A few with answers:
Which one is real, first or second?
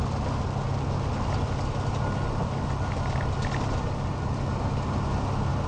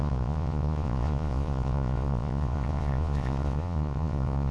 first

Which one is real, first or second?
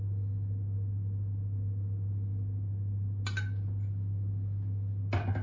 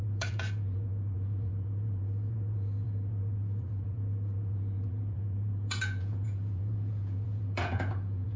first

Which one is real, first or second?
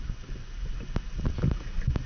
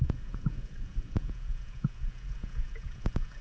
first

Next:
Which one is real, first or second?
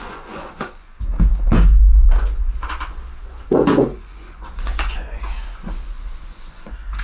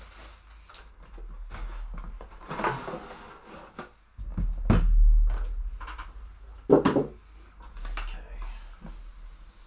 second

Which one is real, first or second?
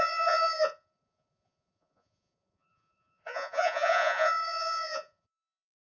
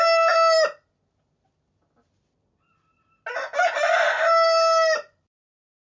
second